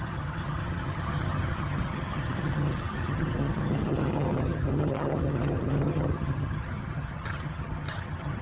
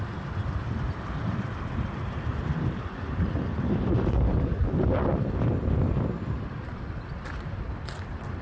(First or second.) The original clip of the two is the second